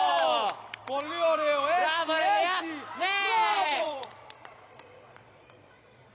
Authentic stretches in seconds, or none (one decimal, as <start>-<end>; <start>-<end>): 0.0-3.5